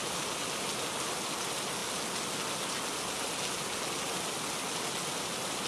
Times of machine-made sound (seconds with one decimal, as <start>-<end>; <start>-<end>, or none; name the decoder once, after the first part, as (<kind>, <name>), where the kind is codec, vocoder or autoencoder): none